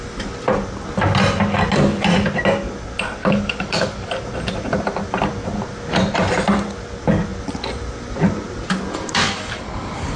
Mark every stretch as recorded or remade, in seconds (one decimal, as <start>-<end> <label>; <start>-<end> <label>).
0.0-3.2 recorded; 3.2-4.1 remade; 4.1-9.2 recorded; 9.2-10.2 remade